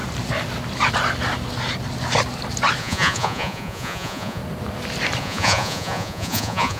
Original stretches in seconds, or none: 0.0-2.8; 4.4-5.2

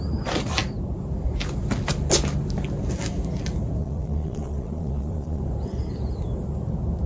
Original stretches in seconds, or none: 0.0-3.8; 5.4-7.1